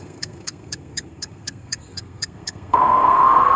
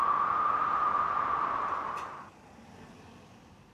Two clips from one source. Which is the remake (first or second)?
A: first